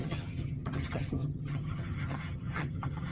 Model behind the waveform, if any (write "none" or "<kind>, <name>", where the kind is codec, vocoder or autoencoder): vocoder, HiFi-GAN